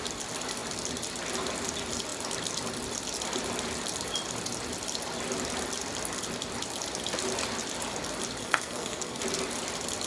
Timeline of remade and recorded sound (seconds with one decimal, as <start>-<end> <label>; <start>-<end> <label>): 0.0-8.4 recorded; 8.4-9.2 remade; 9.2-10.1 recorded